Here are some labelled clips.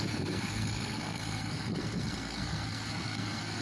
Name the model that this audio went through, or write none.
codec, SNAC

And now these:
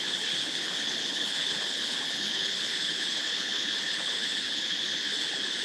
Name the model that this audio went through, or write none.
codec, HILCodec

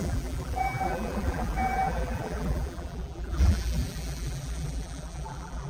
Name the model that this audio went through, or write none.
vocoder, BigVGAN v2